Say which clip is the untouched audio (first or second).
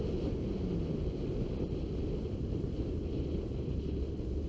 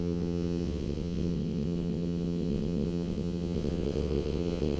first